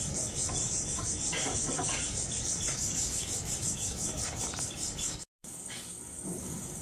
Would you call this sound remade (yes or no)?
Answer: yes